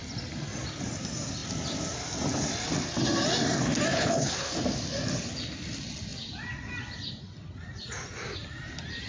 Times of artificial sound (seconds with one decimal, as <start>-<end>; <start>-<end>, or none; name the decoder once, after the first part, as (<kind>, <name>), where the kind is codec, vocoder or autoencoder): 3.9-4.6 (codec, HILCodec)